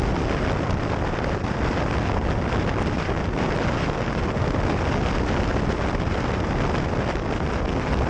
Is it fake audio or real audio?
real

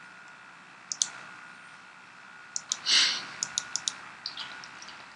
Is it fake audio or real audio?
real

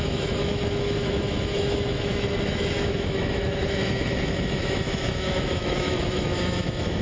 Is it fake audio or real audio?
fake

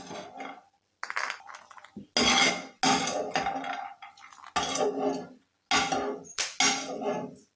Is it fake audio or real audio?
real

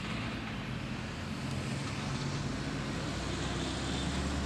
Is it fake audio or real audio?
real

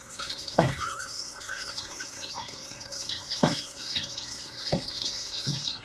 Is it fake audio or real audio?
fake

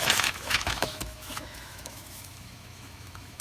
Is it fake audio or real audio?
fake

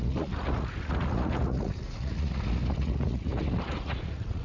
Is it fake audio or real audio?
fake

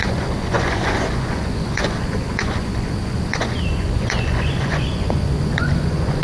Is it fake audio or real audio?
fake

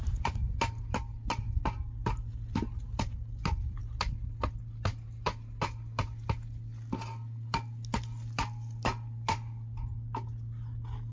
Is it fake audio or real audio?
real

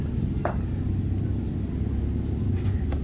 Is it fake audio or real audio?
real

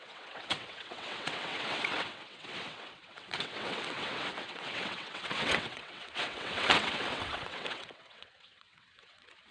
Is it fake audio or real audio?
fake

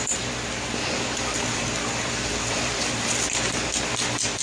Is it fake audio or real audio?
fake